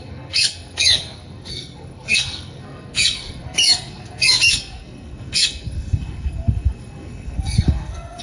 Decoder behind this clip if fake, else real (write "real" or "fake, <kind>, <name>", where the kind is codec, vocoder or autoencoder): fake, codec, SNAC